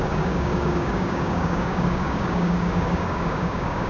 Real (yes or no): no